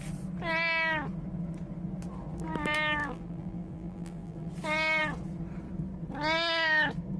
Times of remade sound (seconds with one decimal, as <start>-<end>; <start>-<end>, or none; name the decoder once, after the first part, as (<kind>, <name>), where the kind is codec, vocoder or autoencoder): 3.0-4.5 (vocoder, BigVGAN v2)